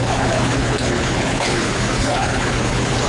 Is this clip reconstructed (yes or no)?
yes